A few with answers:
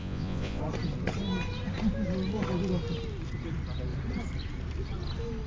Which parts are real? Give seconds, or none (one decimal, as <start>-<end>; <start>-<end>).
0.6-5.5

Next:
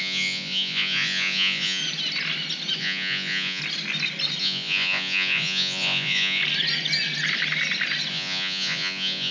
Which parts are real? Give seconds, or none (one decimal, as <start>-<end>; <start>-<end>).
1.8-2.8; 3.6-4.4; 6.4-8.1

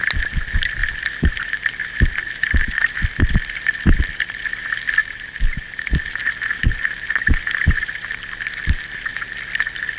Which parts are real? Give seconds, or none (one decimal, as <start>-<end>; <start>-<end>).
0.0-5.0; 5.9-10.0